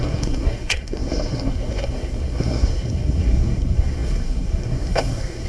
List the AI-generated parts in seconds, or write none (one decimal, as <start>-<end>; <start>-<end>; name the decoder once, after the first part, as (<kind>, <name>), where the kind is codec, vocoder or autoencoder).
0.0-5.5 (codec, SNAC)

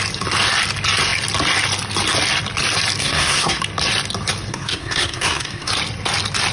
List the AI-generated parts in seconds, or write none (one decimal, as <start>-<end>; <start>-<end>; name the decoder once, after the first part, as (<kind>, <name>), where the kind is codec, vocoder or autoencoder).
3.0-3.6 (codec, SNAC); 4.5-5.7

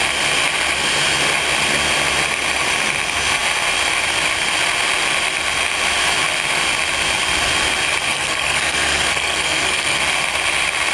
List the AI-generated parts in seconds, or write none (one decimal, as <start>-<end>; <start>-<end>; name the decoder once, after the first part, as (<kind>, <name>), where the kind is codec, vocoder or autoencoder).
8.1-10.0 (codec, SNAC)

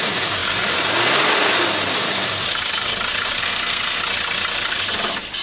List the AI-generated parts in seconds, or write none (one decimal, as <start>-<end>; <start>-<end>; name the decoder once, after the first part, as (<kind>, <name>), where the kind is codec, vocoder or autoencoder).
3.4-4.0 (codec, SNAC)

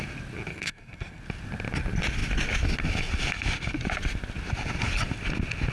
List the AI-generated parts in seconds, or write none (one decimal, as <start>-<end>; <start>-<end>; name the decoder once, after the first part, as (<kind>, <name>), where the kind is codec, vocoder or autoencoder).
0.5-1.2 (codec, SNAC)

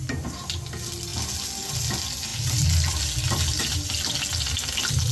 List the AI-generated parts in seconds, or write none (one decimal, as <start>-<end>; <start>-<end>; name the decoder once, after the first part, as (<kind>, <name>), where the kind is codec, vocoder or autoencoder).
none

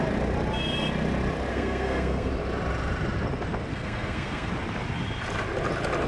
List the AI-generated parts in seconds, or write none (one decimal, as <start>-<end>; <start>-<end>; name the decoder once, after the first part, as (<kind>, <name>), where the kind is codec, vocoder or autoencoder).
1.5-2.3 (codec, SNAC); 3.7-4.5

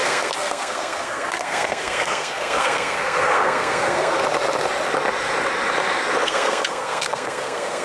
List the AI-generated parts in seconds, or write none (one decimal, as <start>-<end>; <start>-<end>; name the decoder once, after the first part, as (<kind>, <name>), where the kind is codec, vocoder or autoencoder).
0.0-4.2 (codec, SNAC); 6.2-7.8